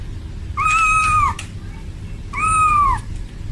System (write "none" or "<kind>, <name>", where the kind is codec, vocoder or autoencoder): none